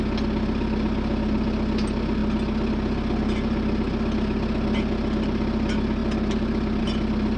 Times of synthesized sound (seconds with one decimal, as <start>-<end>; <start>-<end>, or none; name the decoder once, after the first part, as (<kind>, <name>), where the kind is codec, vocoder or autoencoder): none